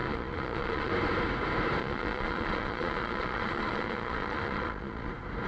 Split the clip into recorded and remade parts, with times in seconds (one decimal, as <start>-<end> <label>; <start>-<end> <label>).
0.0-0.9 remade; 0.9-1.8 recorded; 1.8-5.1 remade; 5.1-5.5 recorded